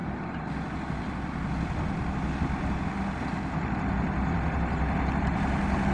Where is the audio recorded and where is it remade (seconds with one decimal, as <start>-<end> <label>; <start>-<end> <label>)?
0.0-5.9 recorded